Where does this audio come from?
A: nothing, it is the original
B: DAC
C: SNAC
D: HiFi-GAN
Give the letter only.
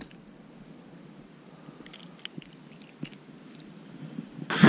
A